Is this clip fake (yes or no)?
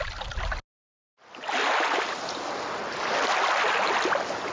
no